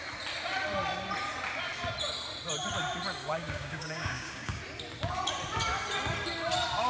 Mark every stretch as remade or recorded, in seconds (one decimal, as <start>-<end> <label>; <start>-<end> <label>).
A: 0.0-3.2 recorded; 3.2-4.6 remade; 4.6-6.9 recorded